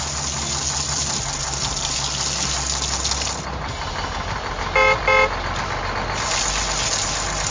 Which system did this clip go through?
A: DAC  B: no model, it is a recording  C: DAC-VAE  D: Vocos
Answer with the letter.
B